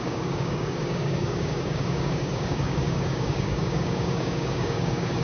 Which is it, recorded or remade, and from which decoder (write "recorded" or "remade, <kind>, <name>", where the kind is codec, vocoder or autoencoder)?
remade, codec, DAC